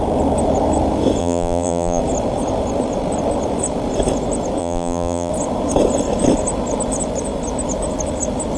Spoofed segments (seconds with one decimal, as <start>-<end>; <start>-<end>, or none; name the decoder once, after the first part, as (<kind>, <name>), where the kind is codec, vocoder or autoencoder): 1.2-2.0 (vocoder, BigVGAN v2); 4.6-5.3